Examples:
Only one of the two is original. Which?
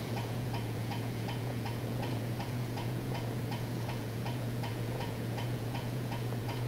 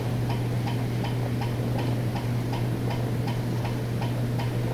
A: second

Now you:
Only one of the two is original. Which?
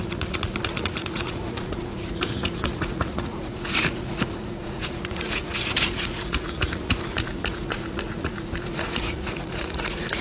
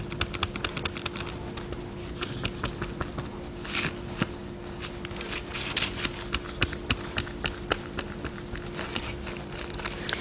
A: second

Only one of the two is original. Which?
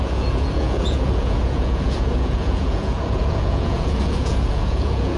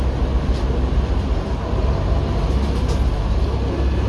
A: second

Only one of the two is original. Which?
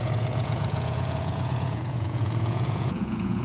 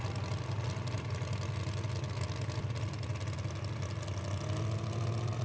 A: second